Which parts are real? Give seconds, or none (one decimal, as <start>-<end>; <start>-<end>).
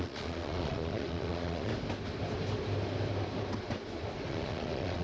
1.7-4.3